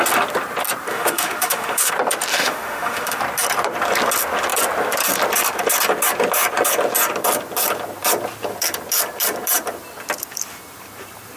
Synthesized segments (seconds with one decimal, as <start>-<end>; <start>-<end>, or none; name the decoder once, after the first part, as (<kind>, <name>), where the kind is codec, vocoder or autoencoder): 0.9-1.9 (autoencoder, DAC-VAE); 2.3-3.2